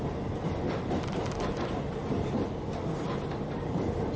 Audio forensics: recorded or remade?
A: recorded